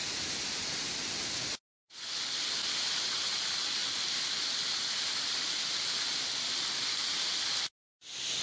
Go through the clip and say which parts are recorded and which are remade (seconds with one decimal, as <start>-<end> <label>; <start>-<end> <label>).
0.0-8.4 recorded